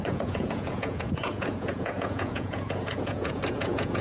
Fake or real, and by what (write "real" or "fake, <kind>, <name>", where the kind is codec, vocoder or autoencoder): fake, vocoder, Vocos